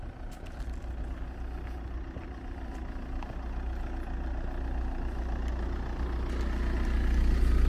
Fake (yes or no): no